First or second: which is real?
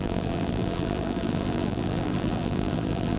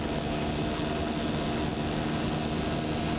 second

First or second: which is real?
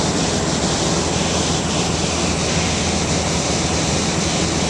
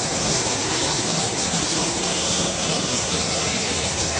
first